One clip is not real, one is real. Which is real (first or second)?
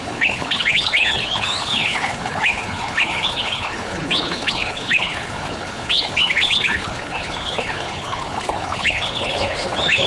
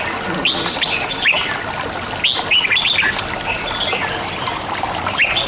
second